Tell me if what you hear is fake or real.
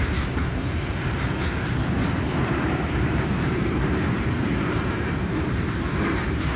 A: fake